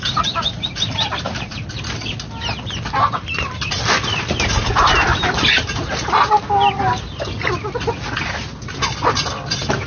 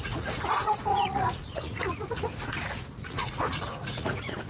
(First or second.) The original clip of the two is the first